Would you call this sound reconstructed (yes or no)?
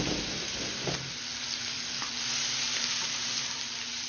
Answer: yes